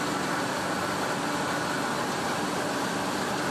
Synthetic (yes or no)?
no